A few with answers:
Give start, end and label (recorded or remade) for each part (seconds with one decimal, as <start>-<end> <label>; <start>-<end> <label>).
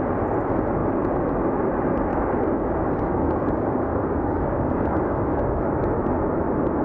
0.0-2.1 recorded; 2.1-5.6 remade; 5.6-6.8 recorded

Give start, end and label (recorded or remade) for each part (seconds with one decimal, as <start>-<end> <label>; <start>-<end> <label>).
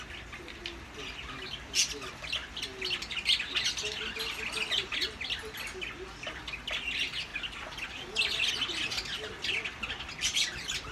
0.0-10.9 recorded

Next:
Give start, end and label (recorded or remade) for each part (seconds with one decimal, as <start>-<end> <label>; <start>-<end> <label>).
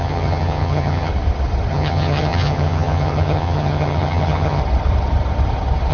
0.0-1.1 remade; 1.1-1.7 recorded; 1.7-4.6 remade; 4.6-5.9 recorded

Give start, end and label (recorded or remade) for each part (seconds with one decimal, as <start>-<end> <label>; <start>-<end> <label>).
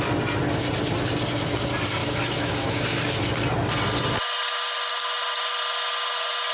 0.0-2.0 recorded; 2.0-3.0 remade; 3.0-6.5 recorded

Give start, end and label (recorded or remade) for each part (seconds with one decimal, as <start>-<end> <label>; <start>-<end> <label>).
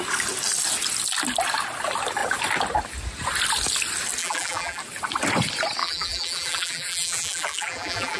0.0-4.2 recorded; 4.2-4.8 remade; 4.8-5.8 recorded; 5.8-8.2 remade